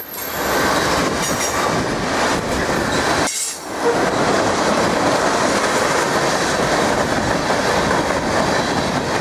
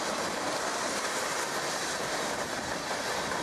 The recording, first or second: first